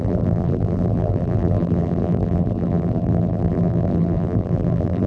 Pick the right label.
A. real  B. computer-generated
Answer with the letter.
B